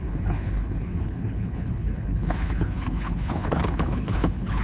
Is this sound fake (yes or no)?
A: yes